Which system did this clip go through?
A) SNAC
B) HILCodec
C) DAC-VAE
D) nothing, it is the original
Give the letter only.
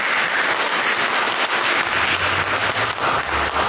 D